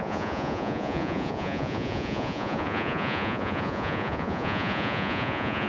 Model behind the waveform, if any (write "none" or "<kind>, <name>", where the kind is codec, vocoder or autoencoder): vocoder, Vocos